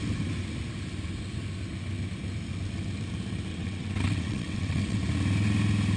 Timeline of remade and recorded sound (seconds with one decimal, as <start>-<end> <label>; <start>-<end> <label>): 0.0-3.5 recorded; 3.5-5.0 remade; 5.0-6.0 recorded